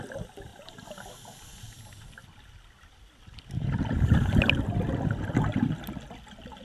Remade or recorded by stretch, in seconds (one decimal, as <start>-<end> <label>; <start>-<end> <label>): 0.0-6.6 recorded